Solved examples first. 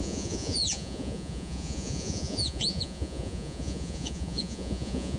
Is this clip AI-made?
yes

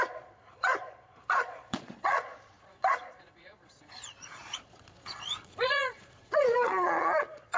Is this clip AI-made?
yes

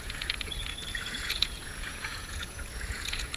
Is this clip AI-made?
yes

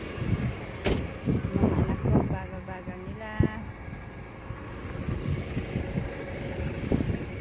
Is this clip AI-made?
no